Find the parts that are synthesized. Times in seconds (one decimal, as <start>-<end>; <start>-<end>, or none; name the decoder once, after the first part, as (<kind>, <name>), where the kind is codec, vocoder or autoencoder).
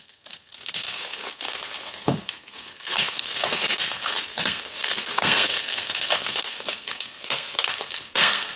0.0-8.6 (codec, SNAC)